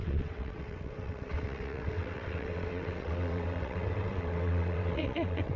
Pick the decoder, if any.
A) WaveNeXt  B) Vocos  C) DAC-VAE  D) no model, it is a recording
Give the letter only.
A